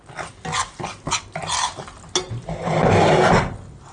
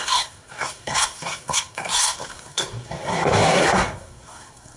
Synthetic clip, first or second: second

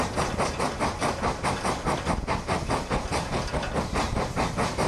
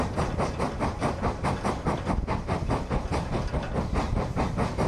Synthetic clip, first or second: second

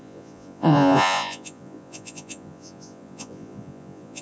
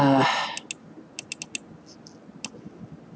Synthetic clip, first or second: first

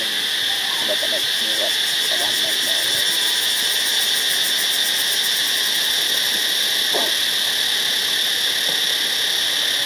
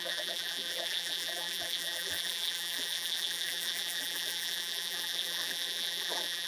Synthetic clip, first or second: second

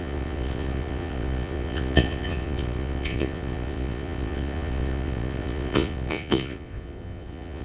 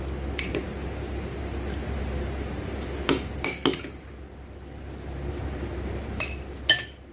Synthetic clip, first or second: first